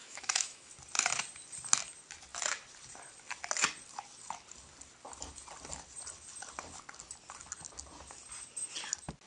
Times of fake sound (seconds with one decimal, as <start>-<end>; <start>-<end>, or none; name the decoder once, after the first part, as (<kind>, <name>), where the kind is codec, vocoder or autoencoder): 0.0-0.7 (autoencoder, DAC-VAE)